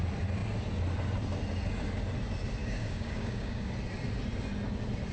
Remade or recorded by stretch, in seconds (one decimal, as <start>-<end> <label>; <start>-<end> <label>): 0.0-2.6 recorded; 2.6-3.7 remade; 3.7-5.1 recorded